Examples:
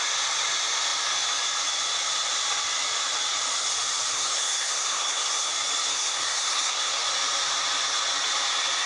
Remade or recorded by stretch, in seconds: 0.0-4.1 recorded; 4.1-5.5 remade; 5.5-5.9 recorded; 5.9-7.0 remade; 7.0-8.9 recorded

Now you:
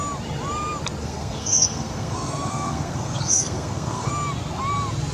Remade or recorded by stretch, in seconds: 0.0-1.0 recorded; 1.0-4.1 remade; 4.1-5.1 recorded